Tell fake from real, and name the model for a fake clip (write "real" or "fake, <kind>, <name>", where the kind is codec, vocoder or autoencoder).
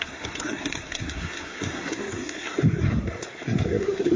fake, codec, SNAC